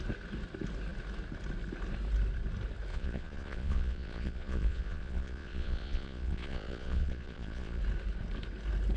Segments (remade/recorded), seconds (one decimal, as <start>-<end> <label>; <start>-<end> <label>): 0.0-2.9 recorded; 2.9-7.8 remade; 7.8-9.0 recorded

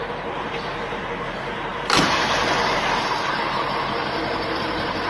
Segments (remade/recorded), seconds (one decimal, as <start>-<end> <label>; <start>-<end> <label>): 0.0-5.1 remade